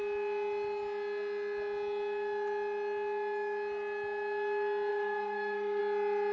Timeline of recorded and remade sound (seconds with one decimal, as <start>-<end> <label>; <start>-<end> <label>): 0.0-4.9 recorded; 4.9-5.8 remade; 5.8-6.3 recorded